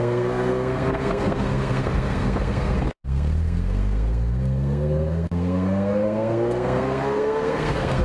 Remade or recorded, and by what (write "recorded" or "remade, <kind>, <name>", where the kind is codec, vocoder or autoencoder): remade, codec, SNAC